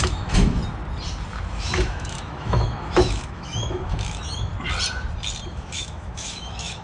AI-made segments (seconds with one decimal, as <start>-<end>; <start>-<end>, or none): 0.0-0.6; 1.5-4.5; 5.5-6.8